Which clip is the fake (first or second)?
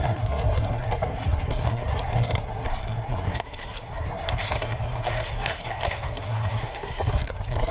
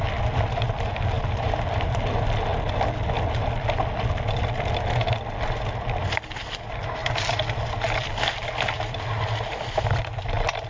first